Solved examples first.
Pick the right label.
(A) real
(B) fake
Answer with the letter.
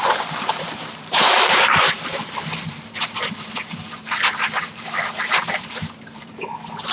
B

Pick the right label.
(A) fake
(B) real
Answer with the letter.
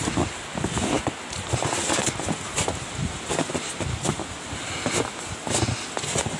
B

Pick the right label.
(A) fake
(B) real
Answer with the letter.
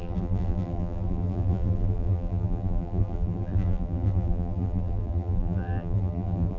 A